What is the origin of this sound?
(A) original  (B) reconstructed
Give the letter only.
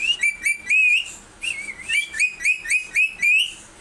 A